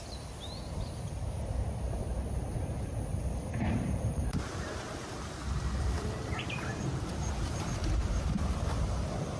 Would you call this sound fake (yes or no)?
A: yes